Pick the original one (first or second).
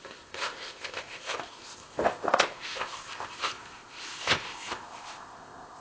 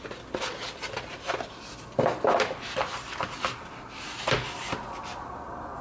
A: second